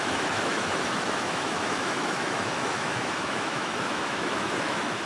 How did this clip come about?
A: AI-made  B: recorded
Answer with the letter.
A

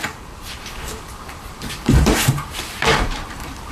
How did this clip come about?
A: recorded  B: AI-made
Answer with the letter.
B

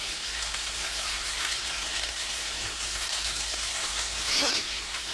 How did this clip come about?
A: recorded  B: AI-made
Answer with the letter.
B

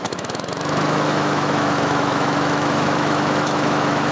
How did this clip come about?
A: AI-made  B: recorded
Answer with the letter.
A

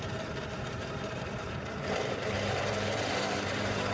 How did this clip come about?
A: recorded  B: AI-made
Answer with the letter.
B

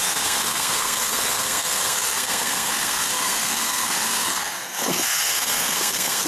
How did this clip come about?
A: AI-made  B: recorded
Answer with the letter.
A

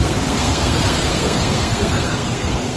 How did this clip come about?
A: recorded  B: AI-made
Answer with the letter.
B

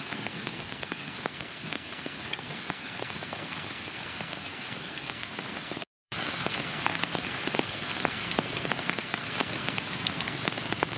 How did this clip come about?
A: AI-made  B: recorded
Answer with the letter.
A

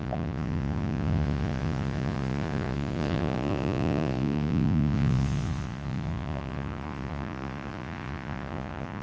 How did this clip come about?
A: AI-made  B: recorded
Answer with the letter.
A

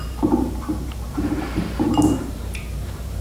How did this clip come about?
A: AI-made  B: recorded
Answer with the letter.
A